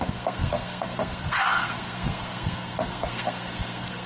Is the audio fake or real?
fake